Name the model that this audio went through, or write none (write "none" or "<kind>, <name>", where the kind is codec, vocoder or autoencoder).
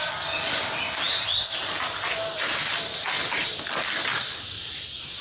none